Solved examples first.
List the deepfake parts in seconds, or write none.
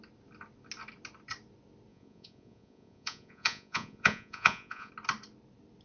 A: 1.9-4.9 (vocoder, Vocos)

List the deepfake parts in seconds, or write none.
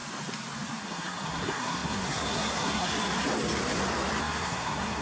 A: 0.8-2.9 (codec, SNAC); 4.2-5.0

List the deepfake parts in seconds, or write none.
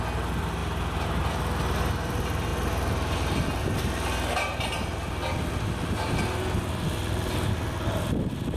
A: 0.6-1.4 (vocoder, BigVGAN v2)